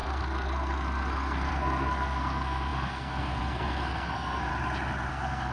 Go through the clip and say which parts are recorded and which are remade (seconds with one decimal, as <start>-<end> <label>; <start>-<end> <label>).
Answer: 0.0-4.5 remade; 4.5-5.1 recorded; 5.1-5.5 remade